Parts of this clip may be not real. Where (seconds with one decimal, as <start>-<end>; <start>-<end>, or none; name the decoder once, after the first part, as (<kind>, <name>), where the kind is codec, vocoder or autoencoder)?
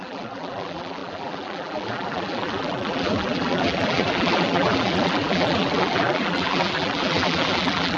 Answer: 0.0-8.0 (vocoder, BigVGAN v2)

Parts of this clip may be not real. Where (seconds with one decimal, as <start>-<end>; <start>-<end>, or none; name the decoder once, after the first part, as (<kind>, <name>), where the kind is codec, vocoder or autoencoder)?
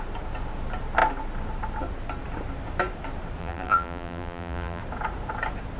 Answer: 3.4-4.8 (vocoder, BigVGAN v2)